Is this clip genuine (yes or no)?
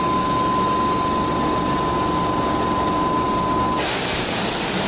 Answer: yes